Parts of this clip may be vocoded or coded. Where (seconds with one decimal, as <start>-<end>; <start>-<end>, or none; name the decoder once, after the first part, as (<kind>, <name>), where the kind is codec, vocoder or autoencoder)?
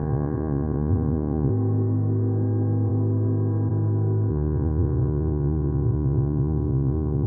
0.0-1.5 (vocoder, Vocos); 4.3-7.3